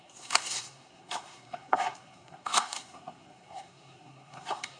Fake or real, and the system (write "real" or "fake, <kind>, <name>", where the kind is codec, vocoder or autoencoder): fake, codec, SNAC